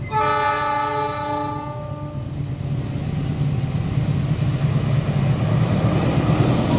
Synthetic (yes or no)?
no